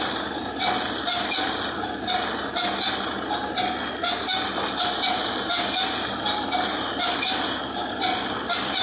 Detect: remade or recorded recorded